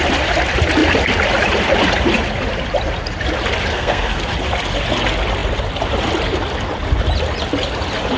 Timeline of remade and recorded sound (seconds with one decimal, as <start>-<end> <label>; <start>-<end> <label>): 0.0-3.7 recorded; 3.7-4.3 remade; 4.3-8.2 recorded